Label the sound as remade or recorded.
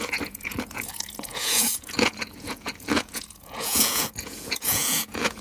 remade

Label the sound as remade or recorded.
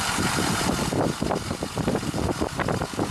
remade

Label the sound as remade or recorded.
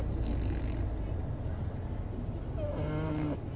recorded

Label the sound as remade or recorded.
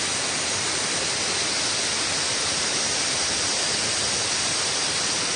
recorded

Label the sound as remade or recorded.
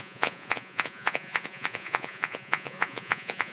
remade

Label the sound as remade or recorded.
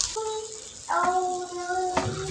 recorded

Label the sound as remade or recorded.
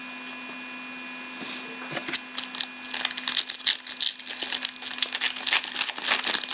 recorded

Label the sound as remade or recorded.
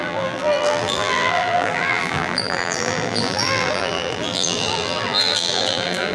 remade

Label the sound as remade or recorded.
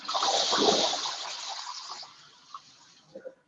recorded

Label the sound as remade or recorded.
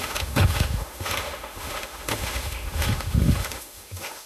remade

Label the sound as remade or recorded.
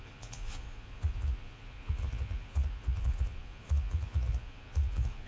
remade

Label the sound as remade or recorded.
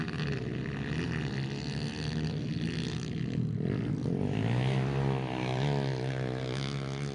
recorded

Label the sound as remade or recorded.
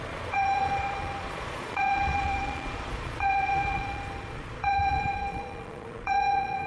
remade